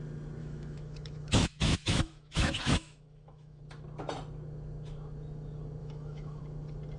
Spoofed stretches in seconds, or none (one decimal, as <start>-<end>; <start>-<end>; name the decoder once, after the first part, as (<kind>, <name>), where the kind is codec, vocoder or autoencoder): 0.4-3.6 (autoencoder, DAC-VAE); 5.8-6.4